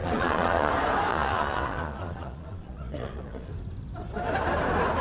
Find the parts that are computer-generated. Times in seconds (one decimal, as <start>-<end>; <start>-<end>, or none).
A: 0.0-0.7; 1.1-3.5